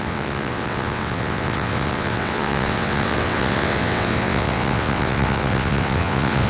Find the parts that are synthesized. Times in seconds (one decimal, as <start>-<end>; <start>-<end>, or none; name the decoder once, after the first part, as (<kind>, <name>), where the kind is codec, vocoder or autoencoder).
0.0-6.5 (vocoder, WaveNeXt)